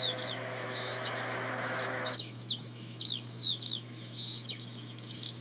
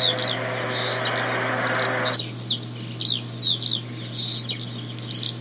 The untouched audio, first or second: second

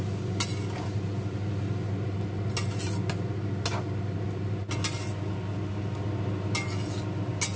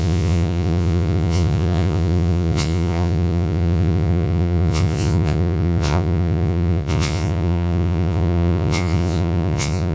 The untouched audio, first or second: first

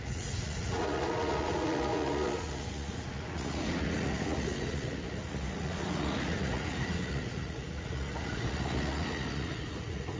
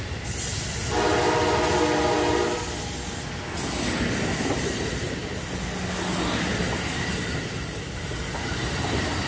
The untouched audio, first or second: second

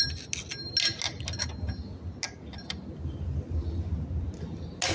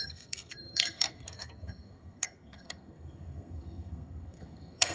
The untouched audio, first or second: first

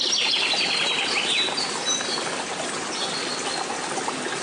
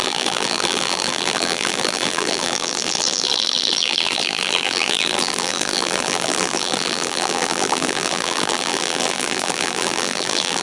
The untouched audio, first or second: first